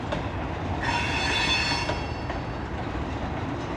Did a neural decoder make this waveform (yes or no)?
no